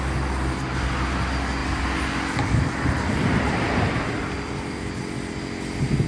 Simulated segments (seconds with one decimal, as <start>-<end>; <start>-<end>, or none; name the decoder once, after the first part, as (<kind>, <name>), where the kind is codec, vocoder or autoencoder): 1.6-5.3 (vocoder, BigVGAN v2)